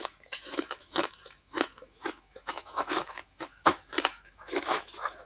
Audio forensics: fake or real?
fake